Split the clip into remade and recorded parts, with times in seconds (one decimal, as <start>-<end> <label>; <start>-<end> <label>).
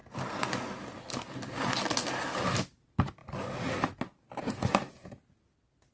0.0-5.9 recorded